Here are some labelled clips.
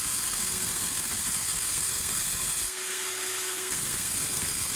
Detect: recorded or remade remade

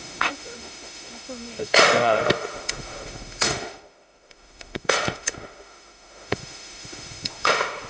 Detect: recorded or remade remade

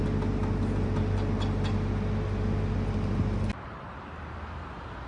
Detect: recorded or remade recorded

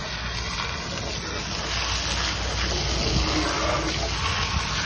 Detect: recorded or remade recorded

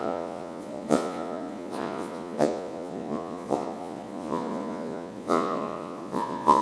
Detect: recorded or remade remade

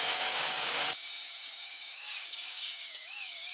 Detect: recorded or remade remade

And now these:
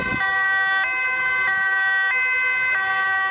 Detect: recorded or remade recorded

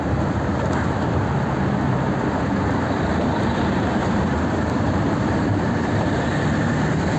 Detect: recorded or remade remade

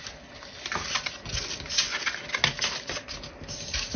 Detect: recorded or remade recorded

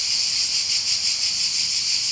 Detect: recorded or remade recorded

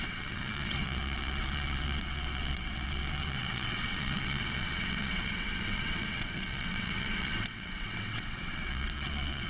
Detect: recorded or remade remade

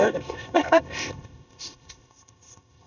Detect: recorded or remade remade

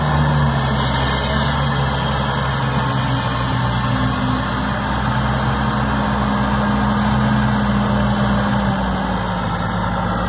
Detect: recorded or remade recorded